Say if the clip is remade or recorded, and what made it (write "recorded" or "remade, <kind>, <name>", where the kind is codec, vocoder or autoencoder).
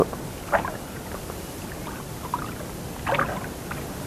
recorded